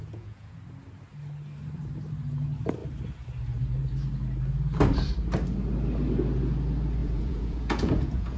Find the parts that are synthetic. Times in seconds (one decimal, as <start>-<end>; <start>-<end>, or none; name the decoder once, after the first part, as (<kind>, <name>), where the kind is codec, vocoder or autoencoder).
0.0-0.6 (vocoder, Vocos); 7.0-8.4